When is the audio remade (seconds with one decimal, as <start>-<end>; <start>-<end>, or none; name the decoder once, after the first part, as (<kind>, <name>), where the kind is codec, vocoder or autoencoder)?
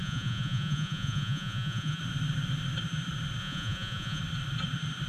0.0-2.0 (vocoder, Vocos); 3.4-4.2